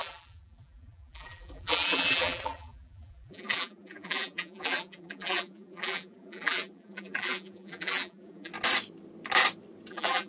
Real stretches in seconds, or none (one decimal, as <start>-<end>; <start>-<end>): 8.5-9.9